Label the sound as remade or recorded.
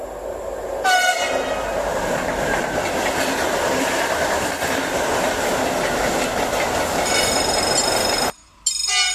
recorded